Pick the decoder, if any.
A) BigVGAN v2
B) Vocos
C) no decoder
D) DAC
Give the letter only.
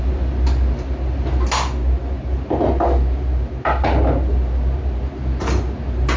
C